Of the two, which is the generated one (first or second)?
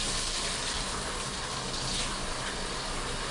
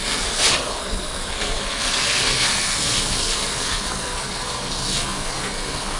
second